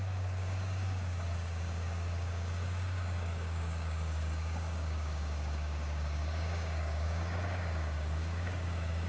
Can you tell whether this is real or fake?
fake